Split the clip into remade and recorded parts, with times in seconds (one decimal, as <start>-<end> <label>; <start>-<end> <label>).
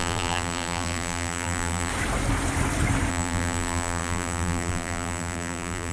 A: 0.0-1.9 remade; 1.9-3.1 recorded; 3.1-5.9 remade